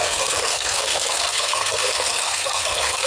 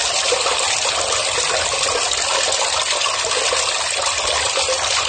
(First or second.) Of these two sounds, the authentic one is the second